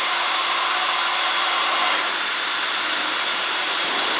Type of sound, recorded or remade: remade